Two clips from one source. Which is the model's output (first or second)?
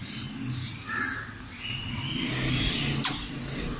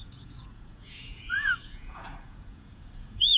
second